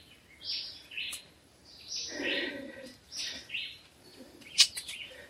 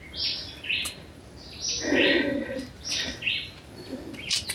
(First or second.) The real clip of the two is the second